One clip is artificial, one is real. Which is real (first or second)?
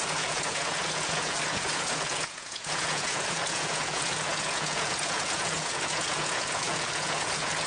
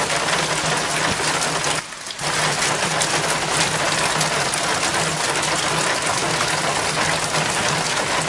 second